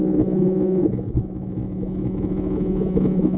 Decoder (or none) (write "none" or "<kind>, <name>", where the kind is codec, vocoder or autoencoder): vocoder, Vocos